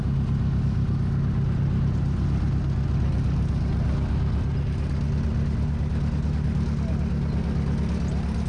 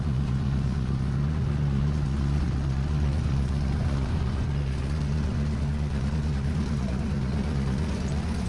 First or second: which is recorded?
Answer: first